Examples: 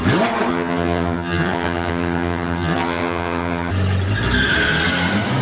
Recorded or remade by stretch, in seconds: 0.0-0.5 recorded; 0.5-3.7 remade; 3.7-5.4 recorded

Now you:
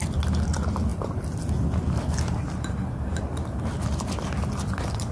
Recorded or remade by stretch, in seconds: 0.0-5.1 recorded

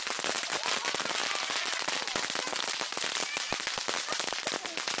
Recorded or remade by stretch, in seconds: 0.0-5.0 recorded